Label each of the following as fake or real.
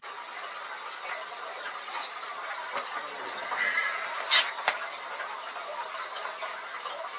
real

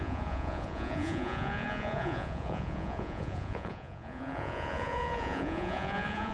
fake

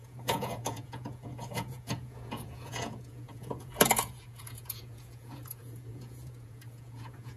fake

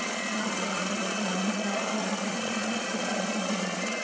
fake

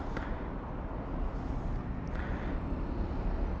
real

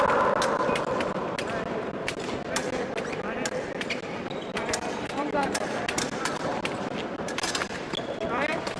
real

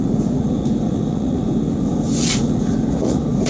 fake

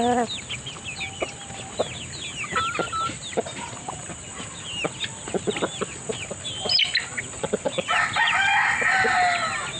real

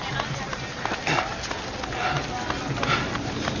real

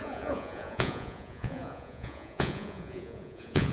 fake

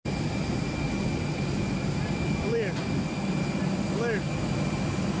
real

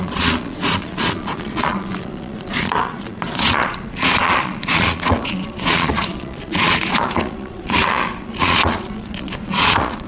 fake